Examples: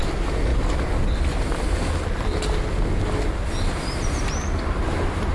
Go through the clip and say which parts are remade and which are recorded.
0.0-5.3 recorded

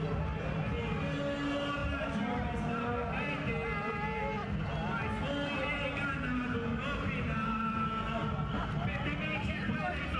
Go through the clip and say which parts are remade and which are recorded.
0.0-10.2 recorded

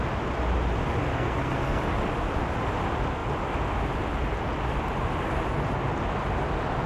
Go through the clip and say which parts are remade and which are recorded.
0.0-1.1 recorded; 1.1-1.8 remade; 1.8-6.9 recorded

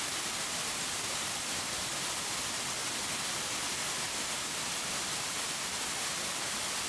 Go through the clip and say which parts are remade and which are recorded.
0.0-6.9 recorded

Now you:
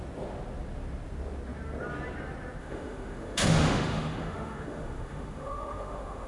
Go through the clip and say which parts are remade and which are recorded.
0.0-2.6 recorded; 2.6-6.3 remade

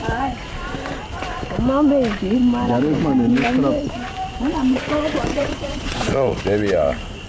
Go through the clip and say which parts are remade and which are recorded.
0.0-5.3 recorded; 5.3-6.4 remade; 6.4-7.3 recorded

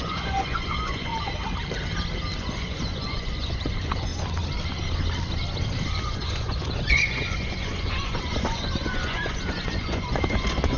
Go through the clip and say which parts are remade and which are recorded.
0.0-1.1 remade; 1.1-2.4 recorded; 2.4-4.1 remade; 4.1-6.0 recorded; 6.0-10.8 remade